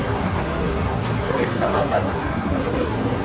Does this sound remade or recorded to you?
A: remade